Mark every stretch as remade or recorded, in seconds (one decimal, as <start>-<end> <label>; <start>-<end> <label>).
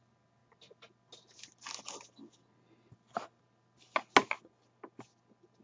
0.0-5.6 recorded